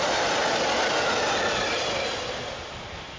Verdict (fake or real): real